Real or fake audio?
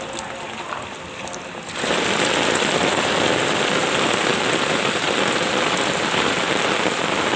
real